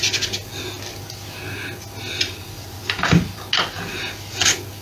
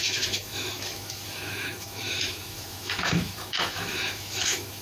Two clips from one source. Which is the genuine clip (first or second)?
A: first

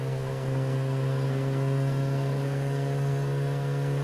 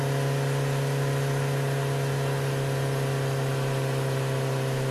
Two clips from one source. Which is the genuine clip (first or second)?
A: second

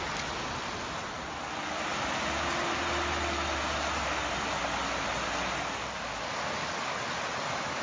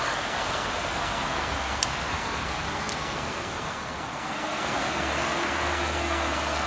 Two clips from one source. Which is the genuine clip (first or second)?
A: first